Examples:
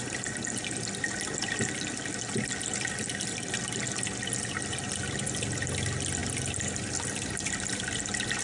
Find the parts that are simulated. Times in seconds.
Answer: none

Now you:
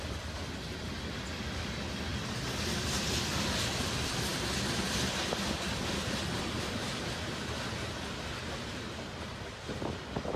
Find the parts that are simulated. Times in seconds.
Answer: none

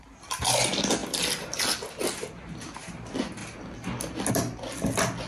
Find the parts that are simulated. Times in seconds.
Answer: none